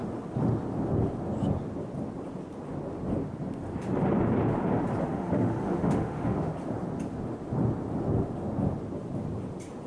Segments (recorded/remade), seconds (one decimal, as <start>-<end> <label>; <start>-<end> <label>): 0.0-5.0 recorded; 5.0-6.5 remade; 6.5-9.9 recorded